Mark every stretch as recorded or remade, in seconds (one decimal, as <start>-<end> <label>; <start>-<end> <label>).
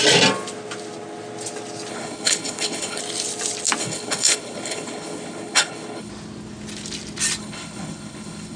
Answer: 0.0-1.9 recorded; 1.9-3.0 remade; 3.0-3.8 recorded; 3.8-6.1 remade; 6.1-7.4 recorded; 7.4-8.6 remade